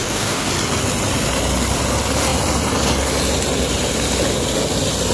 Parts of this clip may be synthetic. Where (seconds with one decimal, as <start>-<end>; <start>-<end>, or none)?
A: 0.0-0.5